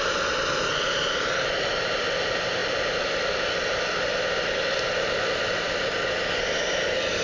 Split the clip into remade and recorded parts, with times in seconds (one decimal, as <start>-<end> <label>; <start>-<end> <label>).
0.0-7.2 recorded